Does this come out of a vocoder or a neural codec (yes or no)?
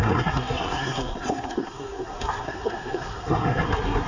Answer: yes